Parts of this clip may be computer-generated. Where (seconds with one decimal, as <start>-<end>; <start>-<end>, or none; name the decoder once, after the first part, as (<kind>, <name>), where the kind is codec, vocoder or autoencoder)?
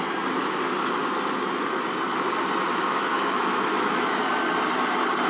0.4-1.0 (autoencoder, DAC-VAE); 2.7-4.2